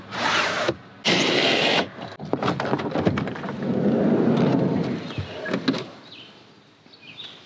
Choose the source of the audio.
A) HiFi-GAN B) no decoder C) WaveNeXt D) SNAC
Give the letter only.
B